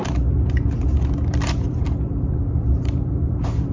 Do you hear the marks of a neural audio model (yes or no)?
yes